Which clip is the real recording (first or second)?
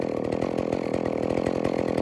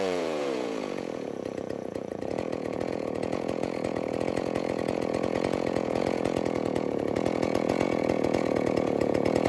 first